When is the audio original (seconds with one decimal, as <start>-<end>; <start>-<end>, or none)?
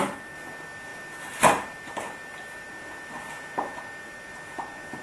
0.0-5.0